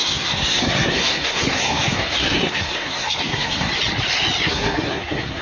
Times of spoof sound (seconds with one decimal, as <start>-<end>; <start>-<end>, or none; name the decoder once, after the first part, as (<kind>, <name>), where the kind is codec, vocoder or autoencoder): 0.0-3.7 (codec, SNAC); 4.5-5.4